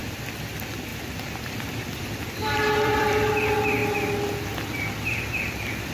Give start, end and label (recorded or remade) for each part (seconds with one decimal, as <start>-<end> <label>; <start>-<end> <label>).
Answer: 0.0-0.5 remade; 0.5-0.9 recorded; 0.9-3.3 remade; 3.3-5.9 recorded